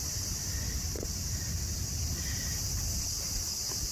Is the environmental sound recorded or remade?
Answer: recorded